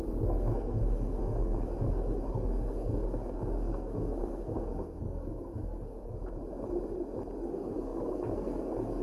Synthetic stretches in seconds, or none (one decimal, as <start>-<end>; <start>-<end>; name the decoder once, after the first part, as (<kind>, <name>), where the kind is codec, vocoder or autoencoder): 0.0-6.2 (codec, SNAC); 7.4-9.0